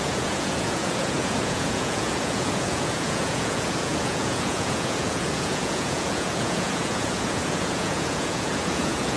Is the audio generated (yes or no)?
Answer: yes